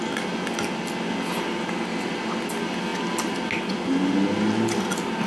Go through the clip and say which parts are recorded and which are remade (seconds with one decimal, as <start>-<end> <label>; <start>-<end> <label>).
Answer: 0.0-5.3 recorded